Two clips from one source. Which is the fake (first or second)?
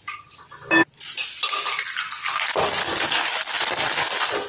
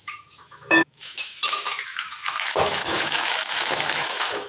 second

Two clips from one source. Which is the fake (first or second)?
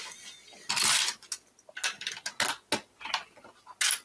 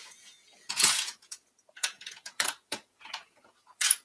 second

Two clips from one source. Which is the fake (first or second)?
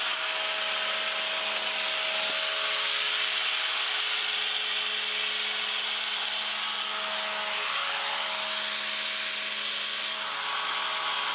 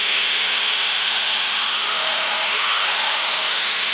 second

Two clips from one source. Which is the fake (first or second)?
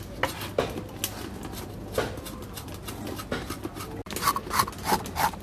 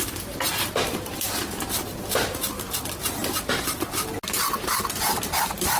second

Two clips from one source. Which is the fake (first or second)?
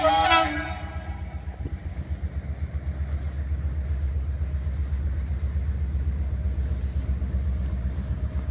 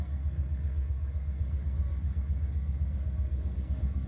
second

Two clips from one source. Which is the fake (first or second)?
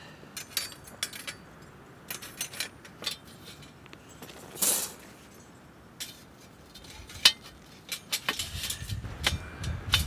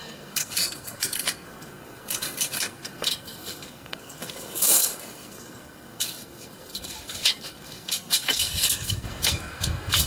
second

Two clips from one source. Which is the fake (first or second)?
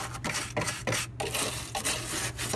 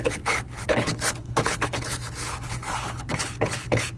second